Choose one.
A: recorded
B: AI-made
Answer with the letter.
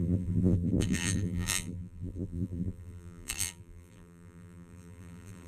B